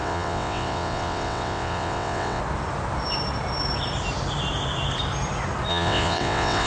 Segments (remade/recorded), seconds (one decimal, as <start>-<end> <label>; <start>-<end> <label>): 0.0-2.4 remade; 2.4-5.7 recorded; 5.7-6.7 remade